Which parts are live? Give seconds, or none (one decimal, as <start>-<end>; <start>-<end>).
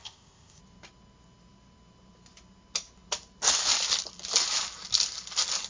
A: 0.6-5.7